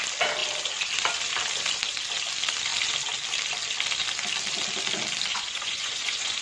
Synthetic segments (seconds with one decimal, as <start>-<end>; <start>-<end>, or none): 5.3-6.4